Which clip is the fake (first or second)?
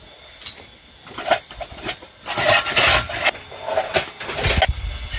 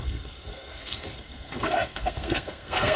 second